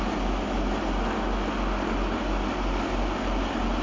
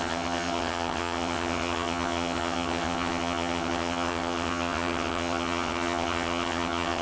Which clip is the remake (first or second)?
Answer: second